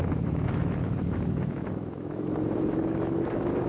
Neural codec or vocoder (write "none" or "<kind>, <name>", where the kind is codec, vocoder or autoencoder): autoencoder, DAC-VAE